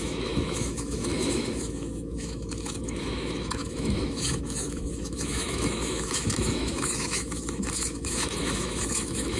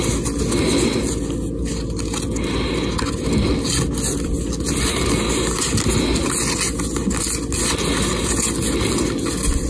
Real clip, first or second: second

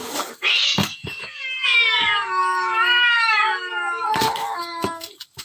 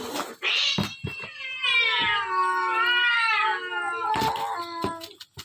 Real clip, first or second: second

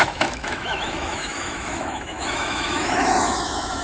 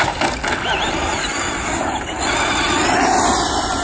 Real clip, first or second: second